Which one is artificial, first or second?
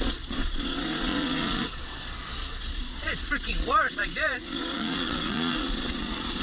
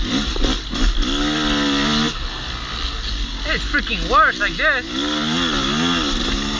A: first